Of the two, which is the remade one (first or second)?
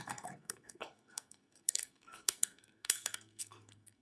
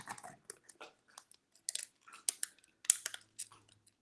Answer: first